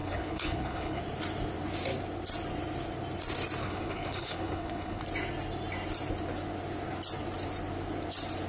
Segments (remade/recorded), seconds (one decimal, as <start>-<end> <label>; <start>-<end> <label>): 0.0-1.0 remade; 1.0-3.6 recorded; 3.6-5.0 remade; 5.0-8.5 recorded